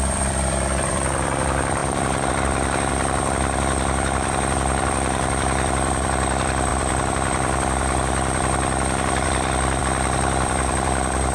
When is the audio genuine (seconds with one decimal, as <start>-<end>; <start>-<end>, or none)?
none